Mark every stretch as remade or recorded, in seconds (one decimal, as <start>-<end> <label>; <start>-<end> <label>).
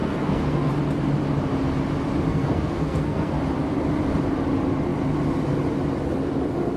0.0-0.7 remade; 0.7-2.3 recorded; 2.3-3.4 remade; 3.4-6.8 recorded